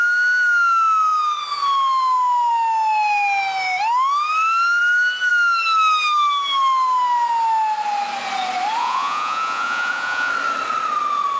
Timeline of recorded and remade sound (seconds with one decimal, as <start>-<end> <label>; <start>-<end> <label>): 0.0-8.8 recorded; 8.8-10.3 remade; 10.3-11.4 recorded